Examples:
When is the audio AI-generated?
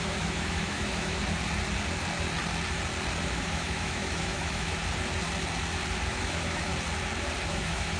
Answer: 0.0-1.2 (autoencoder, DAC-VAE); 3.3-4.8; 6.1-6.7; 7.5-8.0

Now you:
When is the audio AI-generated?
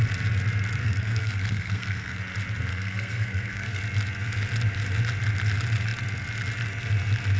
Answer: 0.8-2.2 (codec, SNAC); 2.7-3.8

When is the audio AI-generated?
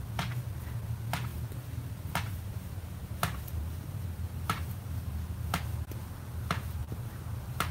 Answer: 1.3-5.2 (vocoder, BigVGAN v2); 6.8-7.7